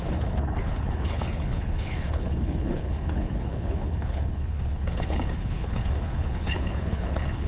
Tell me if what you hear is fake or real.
fake